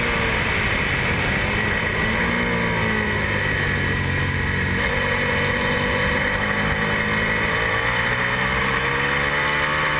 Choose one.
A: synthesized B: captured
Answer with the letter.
B